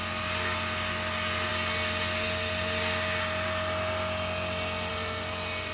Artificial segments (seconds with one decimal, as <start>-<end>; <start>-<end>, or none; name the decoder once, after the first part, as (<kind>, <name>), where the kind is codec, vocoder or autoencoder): none